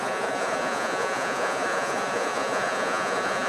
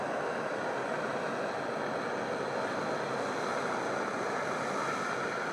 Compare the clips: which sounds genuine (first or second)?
second